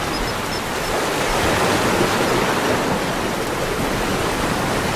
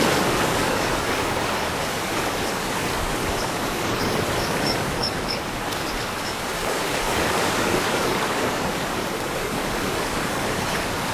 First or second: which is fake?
second